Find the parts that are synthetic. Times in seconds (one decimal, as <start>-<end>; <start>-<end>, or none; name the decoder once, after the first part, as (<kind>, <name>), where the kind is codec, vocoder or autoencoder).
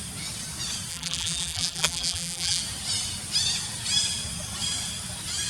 0.9-2.6 (vocoder, BigVGAN v2)